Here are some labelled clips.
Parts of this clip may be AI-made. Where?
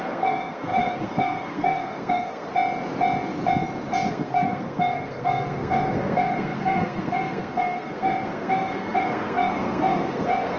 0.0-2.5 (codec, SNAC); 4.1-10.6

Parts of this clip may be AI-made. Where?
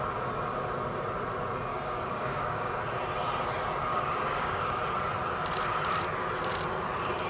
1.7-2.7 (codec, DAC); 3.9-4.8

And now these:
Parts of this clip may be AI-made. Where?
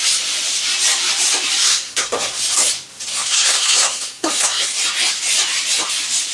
1.6-2.4 (codec, SNAC); 3.1-4.8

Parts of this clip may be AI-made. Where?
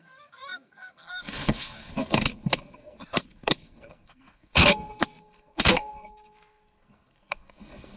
0.0-8.0 (codec, SNAC)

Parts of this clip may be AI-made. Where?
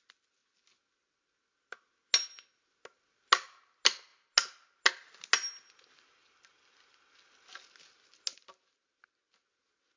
none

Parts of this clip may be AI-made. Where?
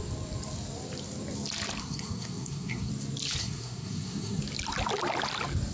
1.8-2.9 (codec, SNAC); 3.4-4.4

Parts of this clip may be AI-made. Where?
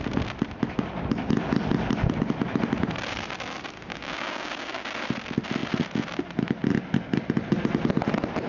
3.9-4.9 (codec, DAC)